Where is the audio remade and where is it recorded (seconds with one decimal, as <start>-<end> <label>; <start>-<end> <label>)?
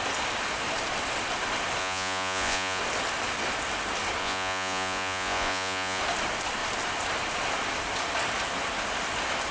0.0-1.8 recorded; 1.8-2.8 remade; 2.8-4.2 recorded; 4.2-6.0 remade; 6.0-9.5 recorded